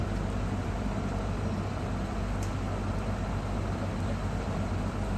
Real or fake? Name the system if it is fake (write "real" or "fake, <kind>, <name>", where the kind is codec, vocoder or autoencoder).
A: real